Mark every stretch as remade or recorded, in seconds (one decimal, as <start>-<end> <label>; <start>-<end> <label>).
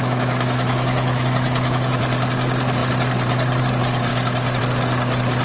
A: 0.0-2.0 remade; 2.0-5.4 recorded